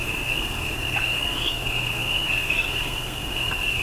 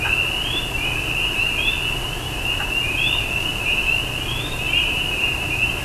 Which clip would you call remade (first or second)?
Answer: first